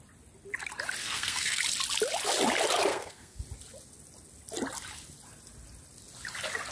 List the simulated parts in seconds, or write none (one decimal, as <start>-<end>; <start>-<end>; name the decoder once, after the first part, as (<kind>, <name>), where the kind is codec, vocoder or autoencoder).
1.0-1.6 (codec, SNAC); 2.9-3.4